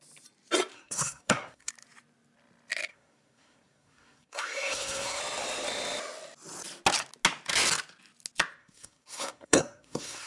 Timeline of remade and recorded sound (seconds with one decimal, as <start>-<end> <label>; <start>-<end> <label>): 0.0-0.7 recorded; 0.7-1.7 remade; 1.7-2.9 recorded; 2.9-5.2 remade; 5.2-8.6 recorded; 8.6-10.3 remade